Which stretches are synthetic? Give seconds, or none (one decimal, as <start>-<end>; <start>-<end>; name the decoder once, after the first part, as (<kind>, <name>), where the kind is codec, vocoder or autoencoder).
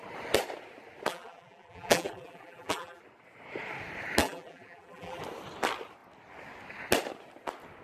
1.1-3.0 (vocoder, BigVGAN v2); 4.2-5.2